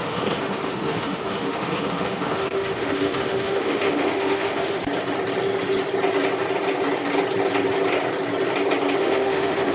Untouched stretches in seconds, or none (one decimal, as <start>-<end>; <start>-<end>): 4.8-9.0